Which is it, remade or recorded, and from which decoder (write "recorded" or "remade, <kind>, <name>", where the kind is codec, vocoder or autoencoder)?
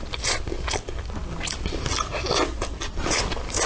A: recorded